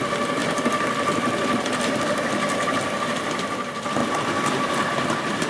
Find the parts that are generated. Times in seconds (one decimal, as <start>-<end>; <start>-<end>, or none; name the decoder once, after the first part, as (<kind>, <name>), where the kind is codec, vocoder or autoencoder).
0.4-3.2 (vocoder, BigVGAN v2); 4.0-4.9